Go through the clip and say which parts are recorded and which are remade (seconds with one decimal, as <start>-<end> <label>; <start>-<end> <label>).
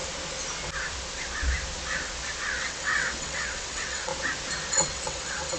0.0-2.6 recorded; 2.6-4.1 remade; 4.1-4.7 recorded; 4.7-5.6 remade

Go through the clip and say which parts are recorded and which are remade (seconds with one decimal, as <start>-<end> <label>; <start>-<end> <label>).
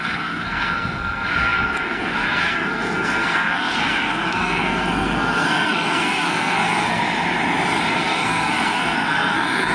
0.0-7.0 remade; 7.0-7.9 recorded; 7.9-9.7 remade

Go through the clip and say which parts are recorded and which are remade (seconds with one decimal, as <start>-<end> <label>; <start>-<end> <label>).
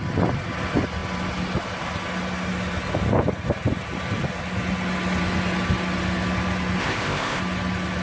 0.0-6.8 recorded; 6.8-7.4 remade; 7.4-8.0 recorded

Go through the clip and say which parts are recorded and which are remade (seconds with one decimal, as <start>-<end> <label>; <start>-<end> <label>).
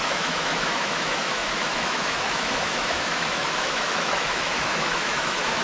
0.0-5.6 remade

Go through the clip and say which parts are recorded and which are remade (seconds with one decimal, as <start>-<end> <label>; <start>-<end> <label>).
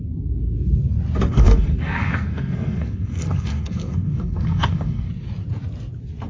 0.0-1.3 recorded; 1.3-5.1 remade; 5.1-6.3 recorded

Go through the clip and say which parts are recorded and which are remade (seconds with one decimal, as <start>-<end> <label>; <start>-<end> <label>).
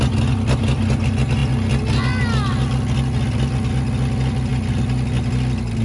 0.0-5.8 recorded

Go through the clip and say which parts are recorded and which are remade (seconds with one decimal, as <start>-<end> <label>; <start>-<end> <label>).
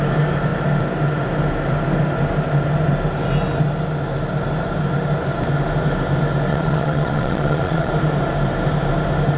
0.0-6.5 recorded; 6.5-7.9 remade; 7.9-9.4 recorded